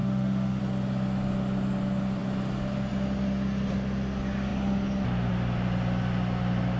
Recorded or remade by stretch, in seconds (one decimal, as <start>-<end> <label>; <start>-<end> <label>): 0.0-0.6 remade; 0.6-6.8 recorded